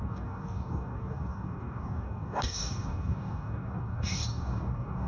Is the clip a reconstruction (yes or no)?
yes